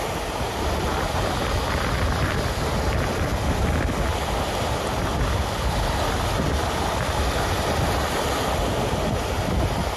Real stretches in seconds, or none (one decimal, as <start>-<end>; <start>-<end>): 0.0-10.0

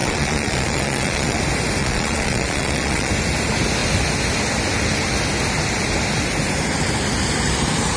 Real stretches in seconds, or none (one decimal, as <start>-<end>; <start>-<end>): 1.4-1.8; 3.1-8.0

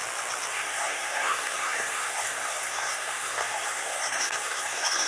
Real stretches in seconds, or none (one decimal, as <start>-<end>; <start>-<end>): 0.0-0.5

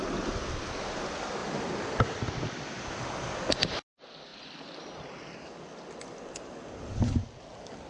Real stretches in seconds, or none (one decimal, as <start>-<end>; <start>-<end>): 0.0-1.4; 2.2-7.9